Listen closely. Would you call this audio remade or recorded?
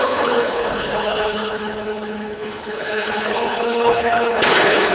remade